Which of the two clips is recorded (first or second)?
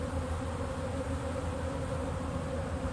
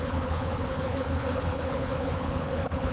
first